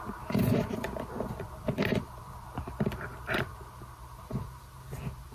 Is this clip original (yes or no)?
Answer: no